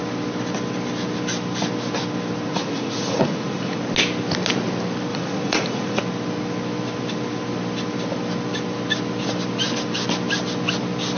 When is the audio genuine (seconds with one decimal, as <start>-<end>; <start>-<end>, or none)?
0.0-2.5; 3.8-5.1; 6.0-11.2

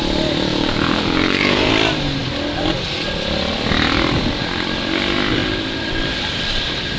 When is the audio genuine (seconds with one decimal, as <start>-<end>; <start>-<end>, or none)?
0.0-0.5; 1.7-7.0

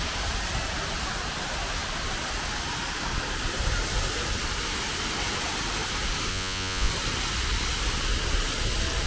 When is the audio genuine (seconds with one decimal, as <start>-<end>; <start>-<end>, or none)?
0.0-6.3; 6.9-9.1

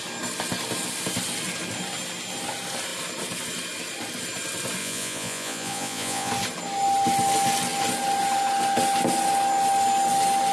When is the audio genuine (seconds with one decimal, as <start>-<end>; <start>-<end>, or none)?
0.0-4.8; 6.3-10.5

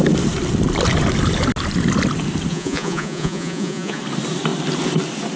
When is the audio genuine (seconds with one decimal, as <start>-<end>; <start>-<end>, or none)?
0.0-2.5; 4.0-5.4

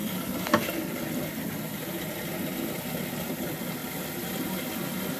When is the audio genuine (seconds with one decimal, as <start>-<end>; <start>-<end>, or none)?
0.0-5.2